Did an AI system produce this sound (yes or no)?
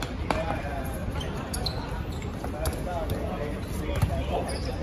no